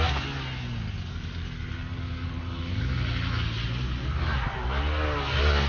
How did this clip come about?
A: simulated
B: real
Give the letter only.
B